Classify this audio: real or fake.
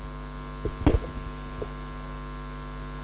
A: real